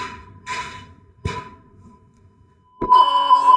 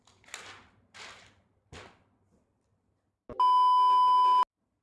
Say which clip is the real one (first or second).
second